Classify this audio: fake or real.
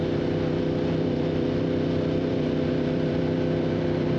fake